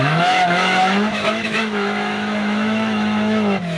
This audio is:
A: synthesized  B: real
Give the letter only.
A